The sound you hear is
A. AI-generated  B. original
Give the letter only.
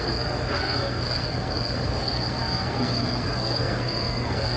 A